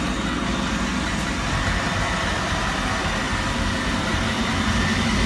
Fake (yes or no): no